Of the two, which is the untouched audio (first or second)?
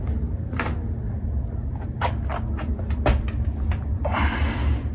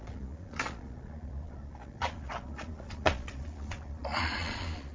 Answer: first